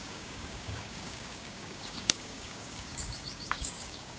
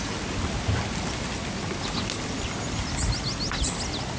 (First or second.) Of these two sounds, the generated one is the first